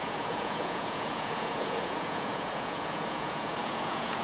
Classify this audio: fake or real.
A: fake